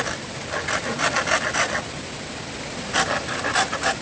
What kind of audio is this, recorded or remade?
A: recorded